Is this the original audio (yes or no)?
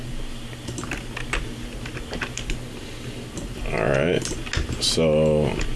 yes